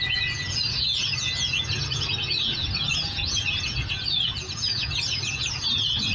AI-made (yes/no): yes